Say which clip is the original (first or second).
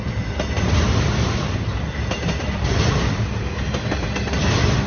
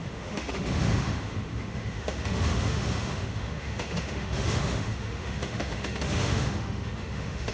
first